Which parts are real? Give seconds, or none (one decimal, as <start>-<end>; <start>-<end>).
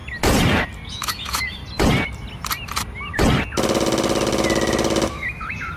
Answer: 0.0-0.9; 1.6-5.1